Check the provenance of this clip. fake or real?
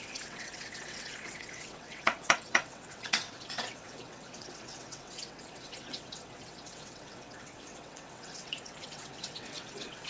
fake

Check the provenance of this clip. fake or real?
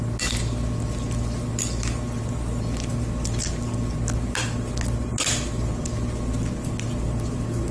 real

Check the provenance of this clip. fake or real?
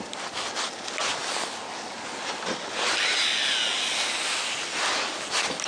real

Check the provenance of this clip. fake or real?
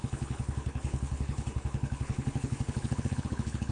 fake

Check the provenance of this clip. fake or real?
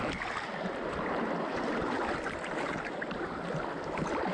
real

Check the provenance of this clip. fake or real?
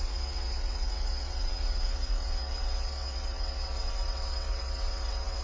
fake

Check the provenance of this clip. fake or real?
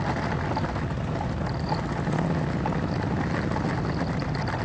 real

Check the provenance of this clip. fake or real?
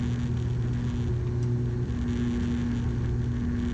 real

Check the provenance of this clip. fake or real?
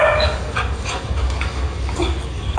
fake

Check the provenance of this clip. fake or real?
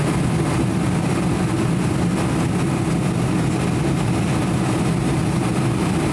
real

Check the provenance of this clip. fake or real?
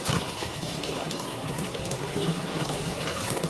fake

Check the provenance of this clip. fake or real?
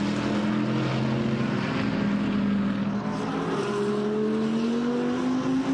real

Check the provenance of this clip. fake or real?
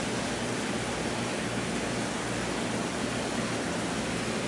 real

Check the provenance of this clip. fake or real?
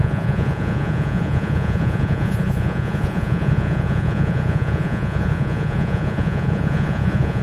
fake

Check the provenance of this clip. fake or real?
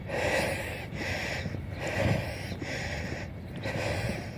real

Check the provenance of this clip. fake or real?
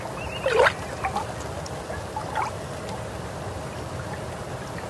real